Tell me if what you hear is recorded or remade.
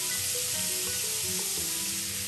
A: recorded